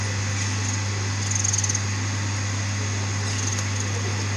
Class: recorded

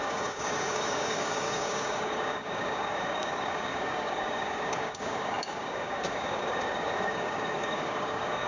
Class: remade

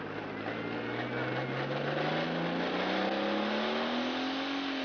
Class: recorded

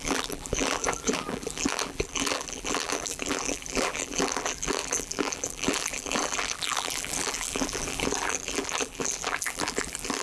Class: remade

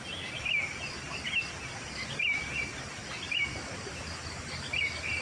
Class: recorded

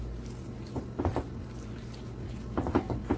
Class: recorded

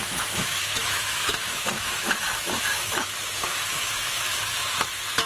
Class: remade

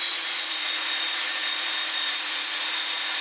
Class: remade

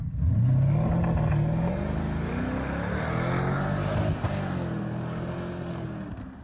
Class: recorded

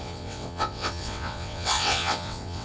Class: remade